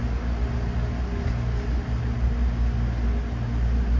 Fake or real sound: real